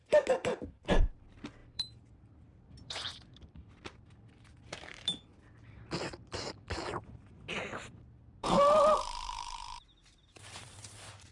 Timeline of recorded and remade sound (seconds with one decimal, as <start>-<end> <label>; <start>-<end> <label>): 0.0-0.9 recorded; 0.9-5.3 remade; 5.3-7.0 recorded; 7.0-11.3 remade